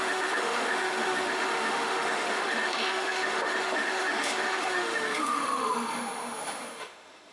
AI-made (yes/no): yes